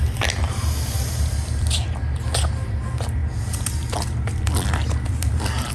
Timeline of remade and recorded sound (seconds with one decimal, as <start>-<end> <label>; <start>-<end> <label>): 0.0-5.7 recorded